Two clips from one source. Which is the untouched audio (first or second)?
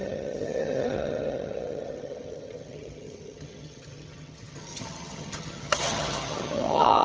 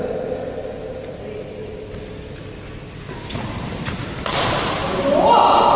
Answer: second